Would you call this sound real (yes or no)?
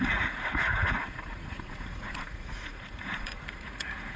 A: no